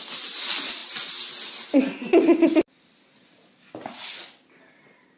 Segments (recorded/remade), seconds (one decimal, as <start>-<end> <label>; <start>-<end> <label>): 0.0-5.2 recorded